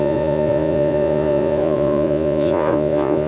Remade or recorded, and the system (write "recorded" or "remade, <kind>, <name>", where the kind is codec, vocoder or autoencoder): remade, vocoder, Vocos